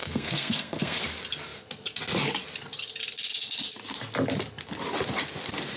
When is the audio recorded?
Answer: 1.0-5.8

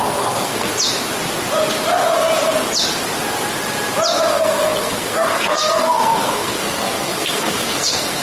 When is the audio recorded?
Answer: 0.7-4.3

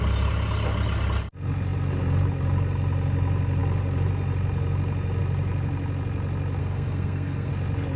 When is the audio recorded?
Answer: 0.0-6.6; 7.5-8.0

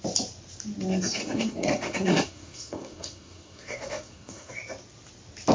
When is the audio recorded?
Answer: 0.0-1.2; 4.5-5.5

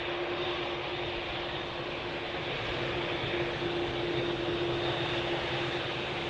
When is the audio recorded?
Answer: 0.0-6.3